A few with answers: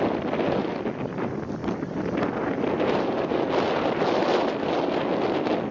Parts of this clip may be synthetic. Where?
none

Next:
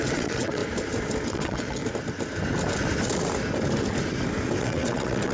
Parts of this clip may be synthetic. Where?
0.0-0.6 (vocoder, WaveNeXt); 1.3-1.8; 4.6-5.3

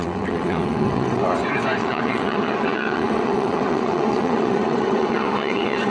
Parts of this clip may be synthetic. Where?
0.0-1.2 (vocoder, WaveNeXt); 1.8-5.9

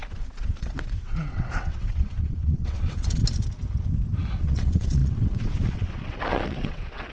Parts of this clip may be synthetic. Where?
0.0-3.2 (vocoder, WaveNeXt); 4.4-7.1